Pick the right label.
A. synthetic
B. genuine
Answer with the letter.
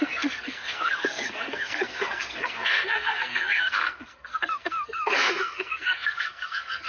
A